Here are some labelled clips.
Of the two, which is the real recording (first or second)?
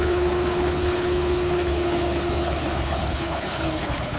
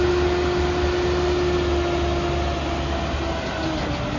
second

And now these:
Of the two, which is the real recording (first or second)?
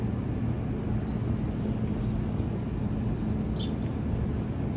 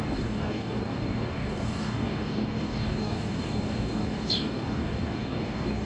first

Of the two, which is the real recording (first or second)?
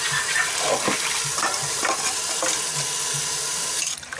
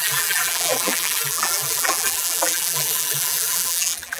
first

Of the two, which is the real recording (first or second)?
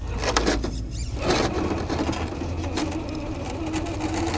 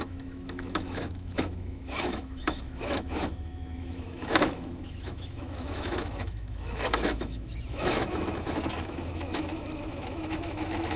first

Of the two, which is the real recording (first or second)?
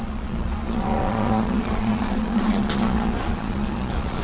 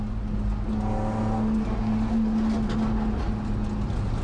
second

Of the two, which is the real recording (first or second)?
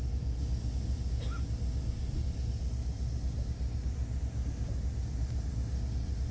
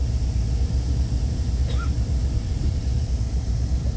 first